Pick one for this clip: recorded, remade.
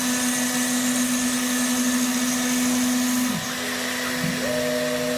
recorded